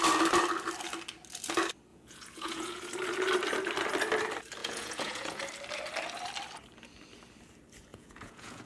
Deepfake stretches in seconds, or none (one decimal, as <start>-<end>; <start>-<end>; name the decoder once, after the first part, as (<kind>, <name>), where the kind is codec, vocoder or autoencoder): 1.9-2.8 (vocoder, Vocos); 4.6-5.4; 7.9-8.7